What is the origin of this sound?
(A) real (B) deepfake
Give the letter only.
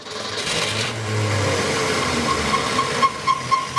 B